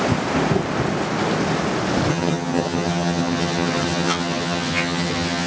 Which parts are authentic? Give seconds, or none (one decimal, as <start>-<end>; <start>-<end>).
0.0-2.1